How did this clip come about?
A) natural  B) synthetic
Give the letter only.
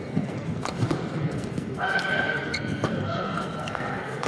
B